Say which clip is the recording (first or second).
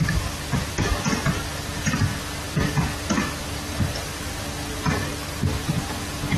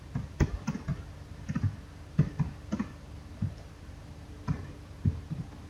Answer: first